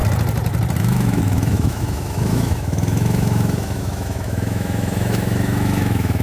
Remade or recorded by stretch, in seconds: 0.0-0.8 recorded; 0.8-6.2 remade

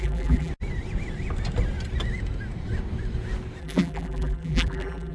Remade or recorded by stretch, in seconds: 0.0-0.5 remade; 0.5-3.6 recorded; 3.6-5.1 remade

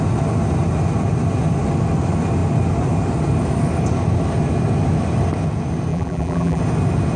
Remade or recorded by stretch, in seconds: 0.0-5.9 recorded; 5.9-6.6 remade; 6.6-7.2 recorded

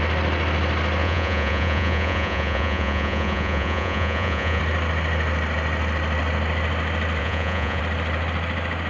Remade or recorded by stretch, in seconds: 0.0-1.0 recorded; 1.0-4.6 remade; 4.6-7.2 recorded; 7.2-7.8 remade; 7.8-8.9 recorded

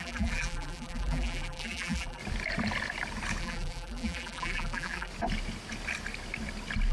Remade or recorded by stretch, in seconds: 0.0-2.2 remade; 2.2-3.4 recorded; 3.4-5.1 remade; 5.1-6.9 recorded

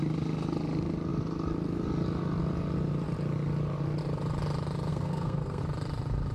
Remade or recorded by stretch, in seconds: 0.0-4.9 recorded; 4.9-5.6 remade; 5.6-6.3 recorded

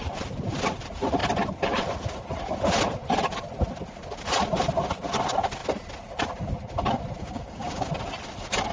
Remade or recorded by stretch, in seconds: 0.0-7.2 recorded; 7.2-7.9 remade; 7.9-8.7 recorded